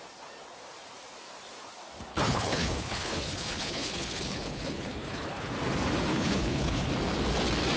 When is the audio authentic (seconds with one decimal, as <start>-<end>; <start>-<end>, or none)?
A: 0.0-2.1; 5.5-6.1; 6.9-7.8